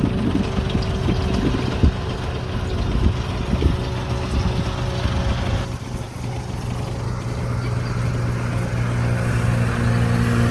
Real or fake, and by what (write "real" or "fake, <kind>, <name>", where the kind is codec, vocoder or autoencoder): real